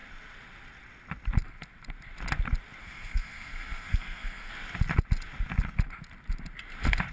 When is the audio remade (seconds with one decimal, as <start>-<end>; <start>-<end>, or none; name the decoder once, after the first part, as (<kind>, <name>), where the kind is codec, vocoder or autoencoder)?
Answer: 2.8-4.5 (codec, SNAC)